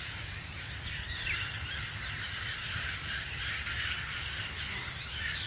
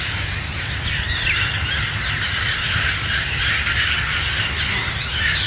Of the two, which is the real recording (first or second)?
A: second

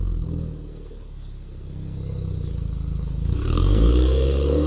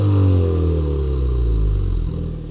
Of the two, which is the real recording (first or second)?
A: second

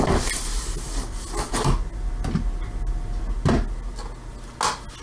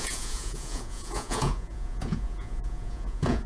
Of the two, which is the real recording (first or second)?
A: first